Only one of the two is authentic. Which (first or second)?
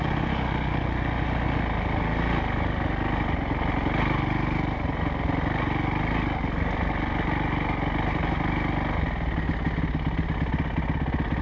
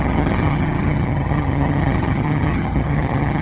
first